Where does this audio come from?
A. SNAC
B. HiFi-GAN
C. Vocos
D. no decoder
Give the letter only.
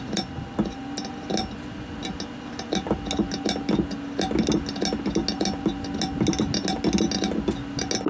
D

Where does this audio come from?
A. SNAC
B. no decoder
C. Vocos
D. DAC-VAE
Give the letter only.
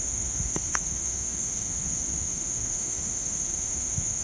D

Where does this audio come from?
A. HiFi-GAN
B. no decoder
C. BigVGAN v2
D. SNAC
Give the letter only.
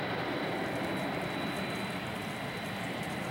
B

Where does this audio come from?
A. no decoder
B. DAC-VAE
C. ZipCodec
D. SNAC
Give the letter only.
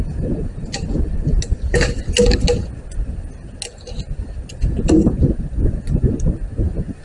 A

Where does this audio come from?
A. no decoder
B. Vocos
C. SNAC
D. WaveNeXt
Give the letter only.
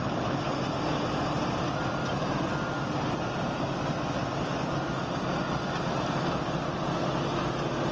A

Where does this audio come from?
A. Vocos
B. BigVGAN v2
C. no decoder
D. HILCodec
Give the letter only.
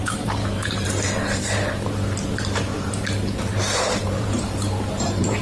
B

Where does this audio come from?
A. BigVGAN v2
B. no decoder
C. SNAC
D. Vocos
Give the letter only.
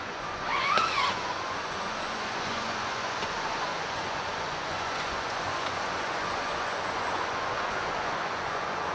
D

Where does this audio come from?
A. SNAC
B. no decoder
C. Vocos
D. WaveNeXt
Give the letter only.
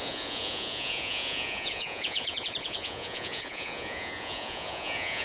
C